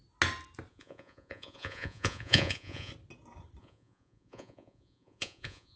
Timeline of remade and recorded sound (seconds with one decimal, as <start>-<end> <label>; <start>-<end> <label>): 0.0-0.7 recorded; 0.7-2.9 remade; 2.9-3.6 recorded; 3.6-5.8 remade